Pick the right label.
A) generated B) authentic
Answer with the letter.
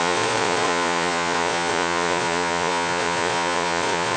A